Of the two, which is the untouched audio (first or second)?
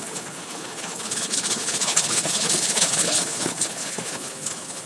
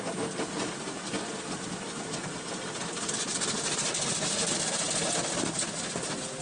second